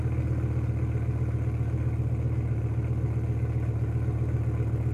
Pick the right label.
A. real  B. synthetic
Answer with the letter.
A